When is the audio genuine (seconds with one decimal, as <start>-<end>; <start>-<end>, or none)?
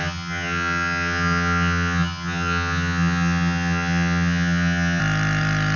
5.0-5.8